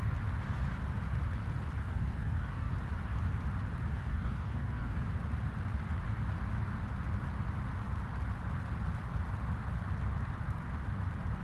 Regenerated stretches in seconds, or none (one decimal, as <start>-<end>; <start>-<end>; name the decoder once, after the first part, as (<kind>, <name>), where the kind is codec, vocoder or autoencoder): 1.8-2.7 (codec, DAC); 3.9-5.1